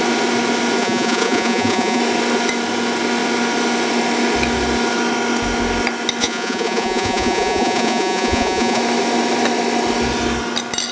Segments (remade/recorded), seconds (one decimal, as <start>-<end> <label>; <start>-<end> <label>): 0.0-0.8 recorded; 0.8-2.0 remade; 2.0-6.2 recorded; 6.2-8.8 remade; 8.8-10.9 recorded